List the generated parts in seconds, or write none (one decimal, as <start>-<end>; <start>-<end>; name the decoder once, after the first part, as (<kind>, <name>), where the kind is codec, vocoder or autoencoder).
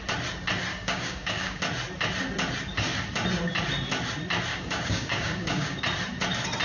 0.7-1.6 (codec, DAC); 4.5-5.8